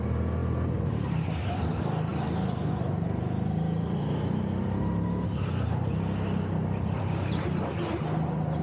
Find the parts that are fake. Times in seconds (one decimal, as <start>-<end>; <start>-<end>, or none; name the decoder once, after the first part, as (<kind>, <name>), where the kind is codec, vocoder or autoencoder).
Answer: none